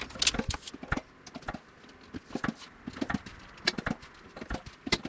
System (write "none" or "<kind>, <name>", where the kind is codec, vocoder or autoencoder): none